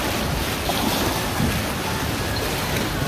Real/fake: real